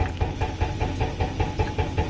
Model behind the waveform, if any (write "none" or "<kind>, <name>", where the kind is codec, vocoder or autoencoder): none